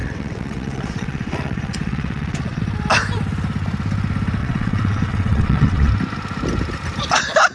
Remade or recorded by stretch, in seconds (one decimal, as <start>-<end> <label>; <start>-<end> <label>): 0.0-2.6 remade; 2.6-4.4 recorded; 4.4-5.9 remade; 5.9-7.5 recorded